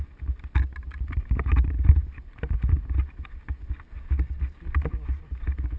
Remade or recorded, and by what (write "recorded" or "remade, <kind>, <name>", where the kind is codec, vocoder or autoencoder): recorded